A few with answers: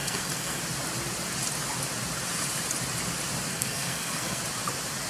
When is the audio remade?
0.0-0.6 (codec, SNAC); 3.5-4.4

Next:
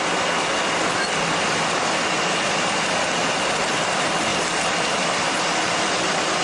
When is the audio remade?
none

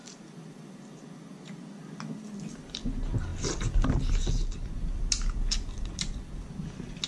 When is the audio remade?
none

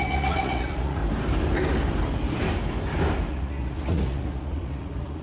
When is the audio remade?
0.0-1.0 (vocoder, Vocos); 3.3-5.2

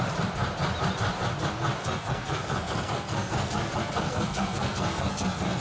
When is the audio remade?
1.8-5.6 (codec, SNAC)

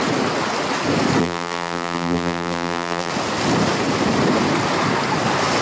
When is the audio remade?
1.2-3.1 (vocoder, BigVGAN v2)

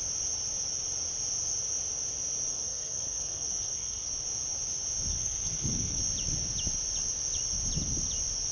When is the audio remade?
2.5-4.1 (codec, SNAC); 5.1-6.0